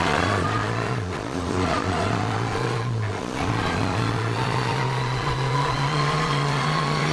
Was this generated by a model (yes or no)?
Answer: yes